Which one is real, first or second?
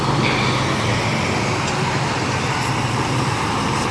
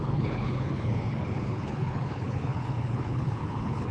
first